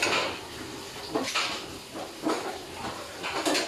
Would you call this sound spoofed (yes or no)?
no